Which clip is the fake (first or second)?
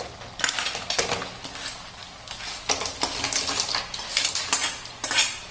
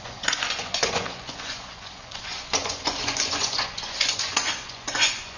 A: second